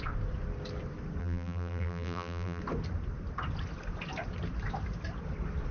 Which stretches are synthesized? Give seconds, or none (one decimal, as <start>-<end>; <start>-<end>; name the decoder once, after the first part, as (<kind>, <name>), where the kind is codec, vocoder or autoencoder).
1.2-2.6 (vocoder, BigVGAN v2)